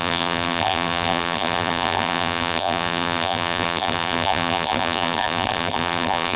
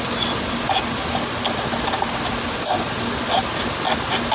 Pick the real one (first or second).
second